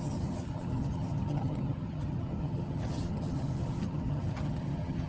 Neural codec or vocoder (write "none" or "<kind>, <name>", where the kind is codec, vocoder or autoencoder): vocoder, HiFi-GAN